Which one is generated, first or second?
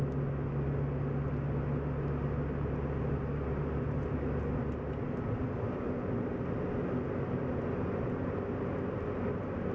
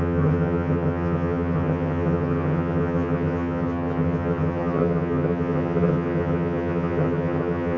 second